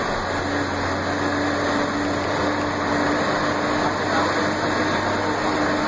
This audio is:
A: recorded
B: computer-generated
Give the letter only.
A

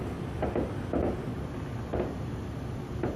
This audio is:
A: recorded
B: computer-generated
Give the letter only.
A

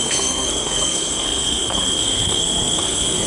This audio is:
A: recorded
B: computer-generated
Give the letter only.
B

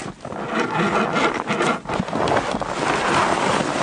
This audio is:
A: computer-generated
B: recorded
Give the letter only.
B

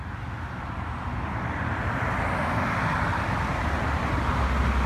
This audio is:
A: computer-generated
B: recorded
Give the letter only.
B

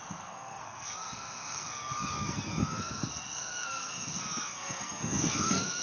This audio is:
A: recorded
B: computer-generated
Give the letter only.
B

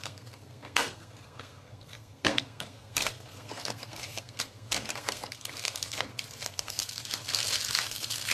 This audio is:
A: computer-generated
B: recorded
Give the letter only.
A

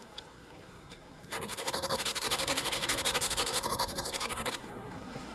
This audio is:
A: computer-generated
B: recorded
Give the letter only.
A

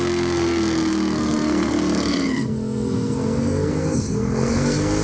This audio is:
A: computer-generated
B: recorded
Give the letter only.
A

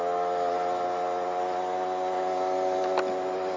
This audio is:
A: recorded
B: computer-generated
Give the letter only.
A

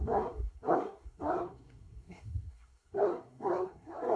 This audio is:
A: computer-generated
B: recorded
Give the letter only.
A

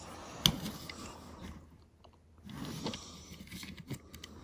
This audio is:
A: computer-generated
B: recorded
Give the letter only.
B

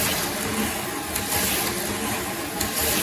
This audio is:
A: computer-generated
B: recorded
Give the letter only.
B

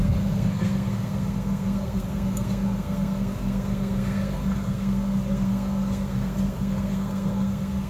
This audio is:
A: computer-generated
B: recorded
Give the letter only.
A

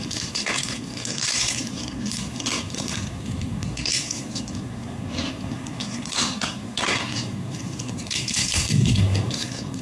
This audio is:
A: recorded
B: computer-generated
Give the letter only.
B